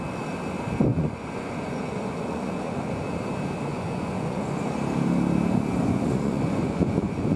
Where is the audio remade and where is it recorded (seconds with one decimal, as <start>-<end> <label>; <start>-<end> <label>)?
0.0-0.9 recorded; 0.9-2.9 remade; 2.9-3.7 recorded; 3.7-4.6 remade; 4.6-5.8 recorded; 5.8-7.4 remade